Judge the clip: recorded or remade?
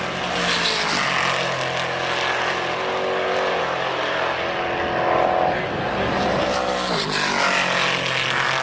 recorded